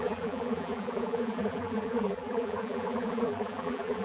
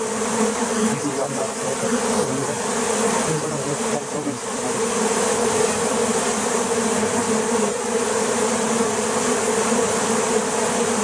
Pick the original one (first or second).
second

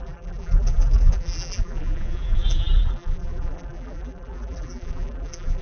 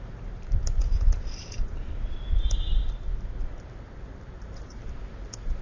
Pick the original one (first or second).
second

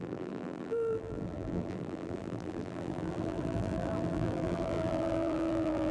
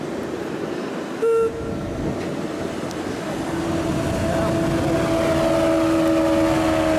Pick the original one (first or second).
second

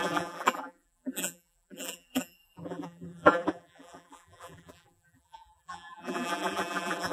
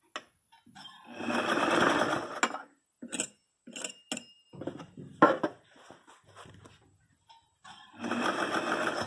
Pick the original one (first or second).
second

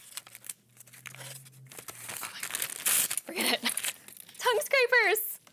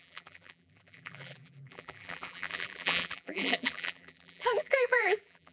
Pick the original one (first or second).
first